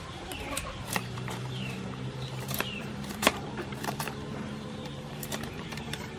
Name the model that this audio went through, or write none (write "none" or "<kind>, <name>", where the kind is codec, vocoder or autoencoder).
vocoder, BigVGAN v2